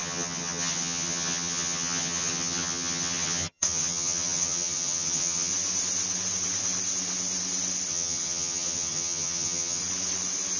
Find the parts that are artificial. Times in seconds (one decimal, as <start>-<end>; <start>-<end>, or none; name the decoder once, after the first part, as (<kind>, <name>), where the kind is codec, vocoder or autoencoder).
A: 0.0-5.5 (vocoder, HiFi-GAN); 7.9-9.8